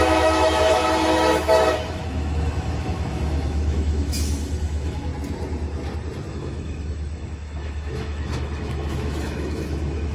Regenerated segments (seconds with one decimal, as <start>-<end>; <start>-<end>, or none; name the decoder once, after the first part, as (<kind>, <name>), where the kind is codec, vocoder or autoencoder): 0.0-5.1 (autoencoder, DAC-VAE); 6.3-10.1